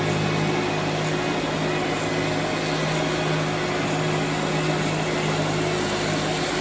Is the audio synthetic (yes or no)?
no